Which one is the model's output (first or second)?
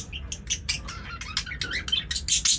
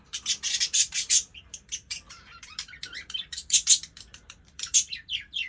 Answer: second